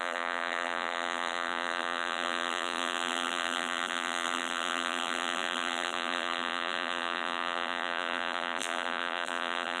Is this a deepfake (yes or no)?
yes